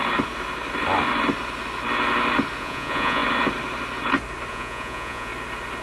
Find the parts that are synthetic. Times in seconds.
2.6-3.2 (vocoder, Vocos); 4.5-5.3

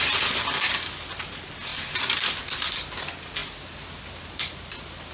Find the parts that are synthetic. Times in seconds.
none

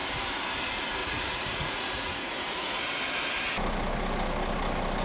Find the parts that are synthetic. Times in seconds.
1.0-2.9 (vocoder, Vocos)

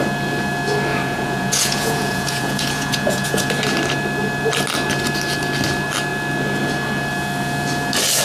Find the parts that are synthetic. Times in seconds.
0.9-3.5 (vocoder, Vocos)

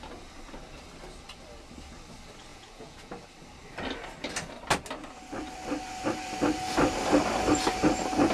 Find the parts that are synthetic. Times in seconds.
2.5-3.1 (vocoder, Vocos)

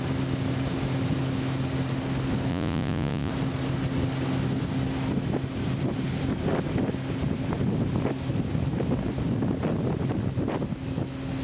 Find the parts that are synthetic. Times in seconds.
2.5-3.3 (vocoder, Vocos)